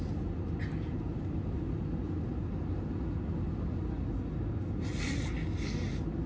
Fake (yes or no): no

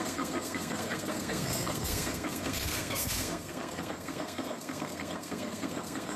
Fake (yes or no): yes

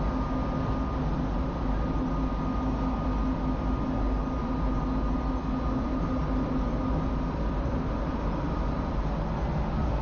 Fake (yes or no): no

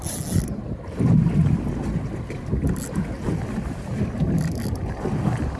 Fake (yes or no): no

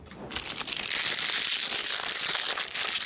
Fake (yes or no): no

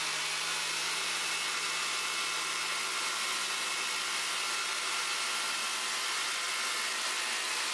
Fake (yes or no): no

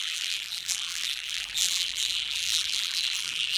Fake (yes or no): yes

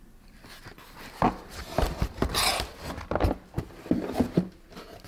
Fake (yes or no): no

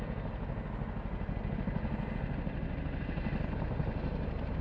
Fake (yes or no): no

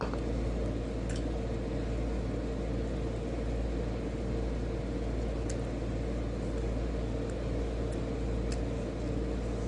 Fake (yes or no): no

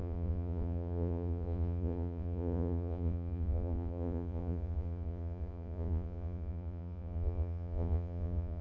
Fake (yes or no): yes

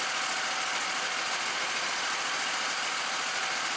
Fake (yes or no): no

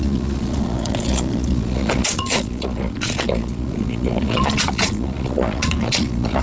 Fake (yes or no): yes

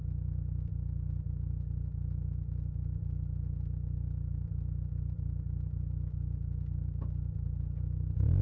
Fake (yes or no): no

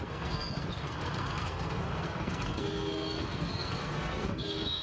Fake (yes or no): yes